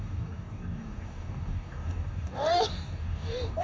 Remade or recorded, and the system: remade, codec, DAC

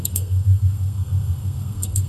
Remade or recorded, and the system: remade, codec, SNAC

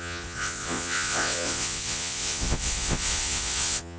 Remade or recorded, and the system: remade, vocoder, Vocos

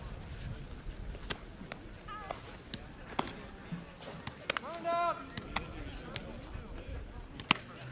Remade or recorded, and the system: recorded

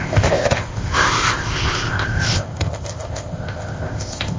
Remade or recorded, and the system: remade, codec, ZipCodec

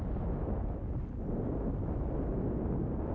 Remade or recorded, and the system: recorded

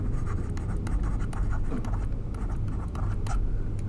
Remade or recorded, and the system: recorded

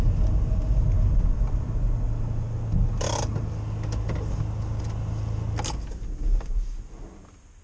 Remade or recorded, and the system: recorded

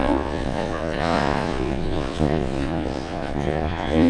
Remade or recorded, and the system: remade, vocoder, Vocos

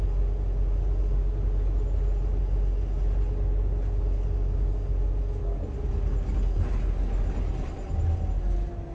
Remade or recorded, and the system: recorded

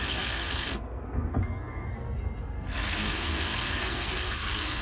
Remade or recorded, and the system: remade, codec, SNAC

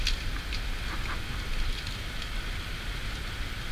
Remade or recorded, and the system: recorded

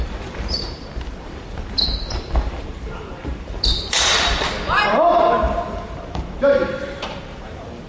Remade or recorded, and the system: remade, vocoder, BigVGAN v2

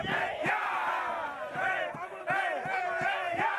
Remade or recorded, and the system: recorded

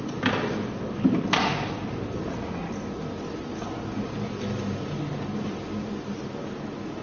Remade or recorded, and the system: recorded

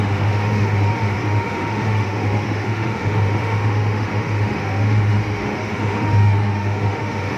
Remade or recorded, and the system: remade, autoencoder, DAC-VAE